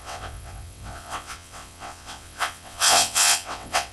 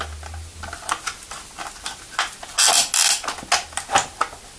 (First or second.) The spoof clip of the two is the first